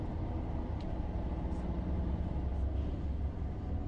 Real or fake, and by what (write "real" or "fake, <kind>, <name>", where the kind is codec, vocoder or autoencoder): real